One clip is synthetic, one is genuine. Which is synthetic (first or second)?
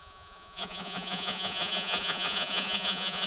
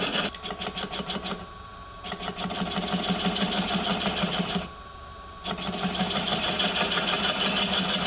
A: first